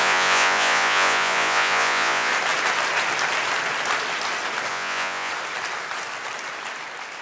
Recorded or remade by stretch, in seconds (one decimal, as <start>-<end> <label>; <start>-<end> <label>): 0.0-2.3 remade; 2.3-4.7 recorded; 4.7-5.3 remade; 5.3-7.2 recorded